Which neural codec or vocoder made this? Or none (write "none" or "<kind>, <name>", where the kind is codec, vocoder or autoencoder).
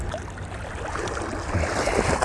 none